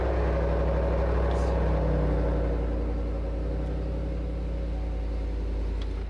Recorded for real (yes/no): yes